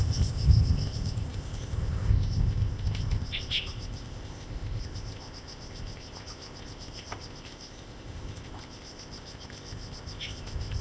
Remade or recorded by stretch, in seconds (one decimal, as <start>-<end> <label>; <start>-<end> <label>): 0.0-10.8 remade